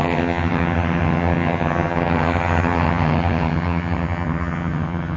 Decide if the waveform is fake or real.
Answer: fake